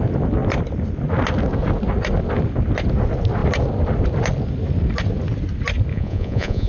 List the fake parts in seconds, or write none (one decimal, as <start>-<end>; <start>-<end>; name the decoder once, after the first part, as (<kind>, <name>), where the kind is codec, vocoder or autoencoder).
5.9-6.7 (vocoder, Vocos)